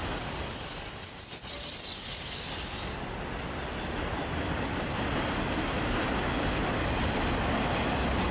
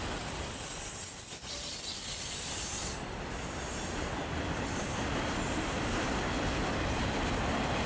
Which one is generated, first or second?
second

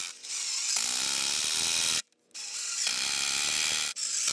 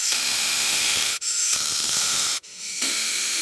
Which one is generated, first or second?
second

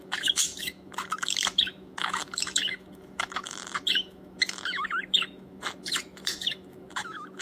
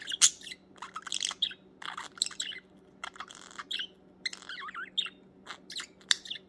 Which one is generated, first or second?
first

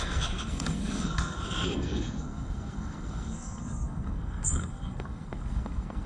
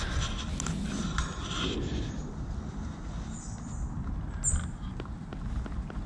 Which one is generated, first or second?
first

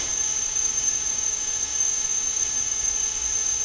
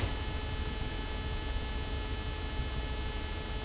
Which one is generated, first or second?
first